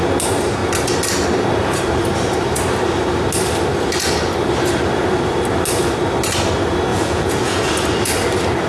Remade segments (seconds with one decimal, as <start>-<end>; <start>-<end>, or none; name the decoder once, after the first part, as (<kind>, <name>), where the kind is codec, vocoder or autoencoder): 6.9-7.6 (vocoder, Vocos)